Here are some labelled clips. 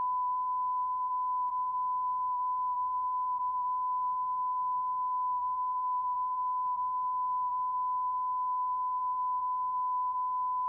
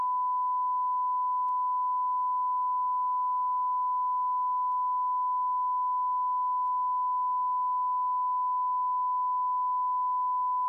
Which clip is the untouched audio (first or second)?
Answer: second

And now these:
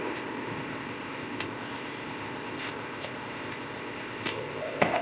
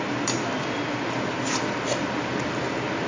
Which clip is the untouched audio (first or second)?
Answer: second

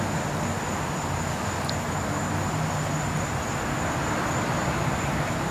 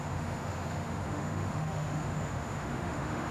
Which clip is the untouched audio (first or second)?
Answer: first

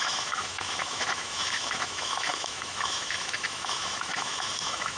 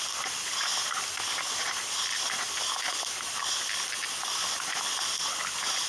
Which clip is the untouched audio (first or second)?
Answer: second